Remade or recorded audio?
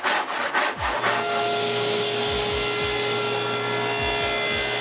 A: recorded